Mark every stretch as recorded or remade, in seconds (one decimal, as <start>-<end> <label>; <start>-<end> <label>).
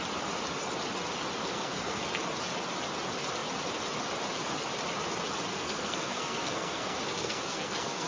0.0-1.4 recorded; 1.4-2.0 remade; 2.0-5.5 recorded; 5.5-8.1 remade